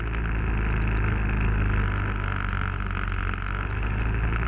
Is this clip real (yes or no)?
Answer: yes